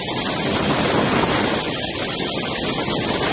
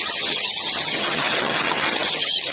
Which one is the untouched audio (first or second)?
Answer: first